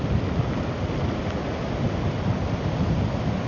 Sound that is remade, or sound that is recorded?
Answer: recorded